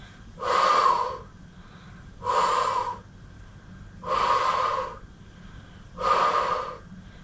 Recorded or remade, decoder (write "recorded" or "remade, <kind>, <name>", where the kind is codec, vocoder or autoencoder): recorded